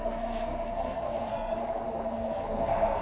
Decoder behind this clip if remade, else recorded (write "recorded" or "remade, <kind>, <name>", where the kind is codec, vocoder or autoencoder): remade, codec, SNAC